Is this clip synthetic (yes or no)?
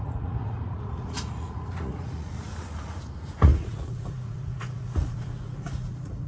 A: yes